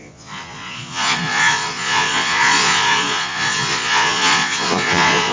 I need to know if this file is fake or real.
fake